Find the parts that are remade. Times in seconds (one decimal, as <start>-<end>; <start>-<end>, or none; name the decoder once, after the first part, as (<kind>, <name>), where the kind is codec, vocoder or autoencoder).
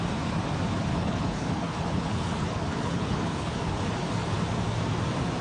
0.9-3.8 (codec, HILCodec)